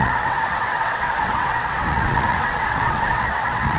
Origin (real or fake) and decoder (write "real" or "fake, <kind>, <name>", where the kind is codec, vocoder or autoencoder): fake, vocoder, WaveNeXt